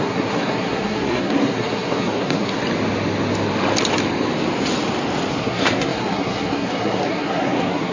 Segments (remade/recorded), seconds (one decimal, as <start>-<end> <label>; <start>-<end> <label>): 0.0-2.6 remade; 2.6-5.3 recorded; 5.3-7.9 remade